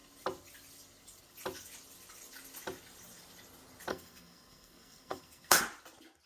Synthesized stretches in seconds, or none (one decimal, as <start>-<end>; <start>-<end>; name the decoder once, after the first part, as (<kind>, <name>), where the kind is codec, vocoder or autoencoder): 3.9-5.6 (codec, SNAC)